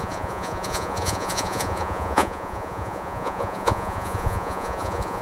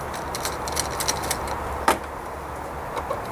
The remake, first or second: first